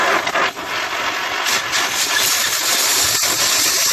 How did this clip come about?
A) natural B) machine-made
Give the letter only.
A